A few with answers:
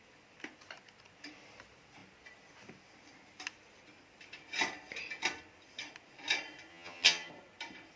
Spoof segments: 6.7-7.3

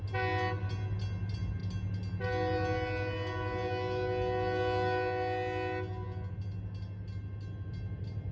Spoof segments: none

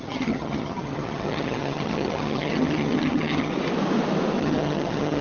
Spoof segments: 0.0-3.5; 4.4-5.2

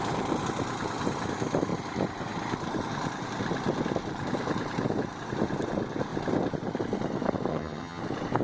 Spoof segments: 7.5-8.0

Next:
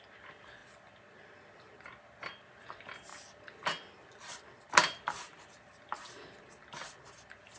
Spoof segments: none

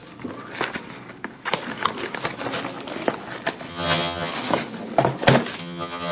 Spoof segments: 3.7-4.3; 5.6-6.1

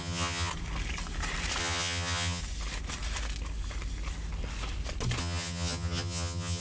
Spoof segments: 0.0-0.5; 1.6-2.4; 5.2-6.6